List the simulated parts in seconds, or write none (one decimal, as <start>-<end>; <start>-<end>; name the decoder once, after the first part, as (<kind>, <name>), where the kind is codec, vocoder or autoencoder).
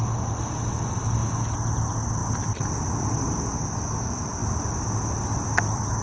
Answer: none